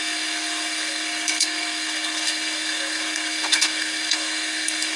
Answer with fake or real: fake